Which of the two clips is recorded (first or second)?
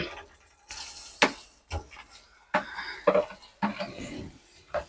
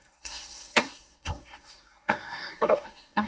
first